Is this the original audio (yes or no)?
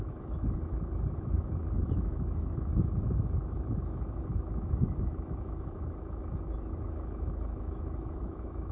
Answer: no